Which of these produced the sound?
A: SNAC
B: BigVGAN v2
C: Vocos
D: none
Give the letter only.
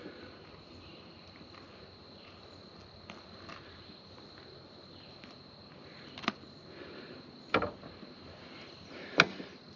D